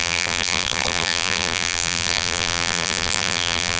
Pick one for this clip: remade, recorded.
remade